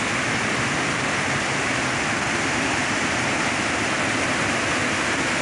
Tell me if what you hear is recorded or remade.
recorded